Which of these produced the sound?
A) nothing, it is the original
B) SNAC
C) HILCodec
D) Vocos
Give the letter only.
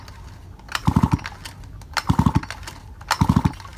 A